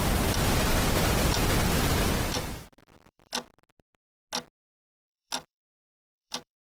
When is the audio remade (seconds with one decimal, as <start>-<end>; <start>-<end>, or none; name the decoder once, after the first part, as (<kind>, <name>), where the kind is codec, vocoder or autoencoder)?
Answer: 0.0-3.3 (vocoder, BigVGAN v2); 4.7-6.6